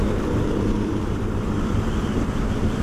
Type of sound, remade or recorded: remade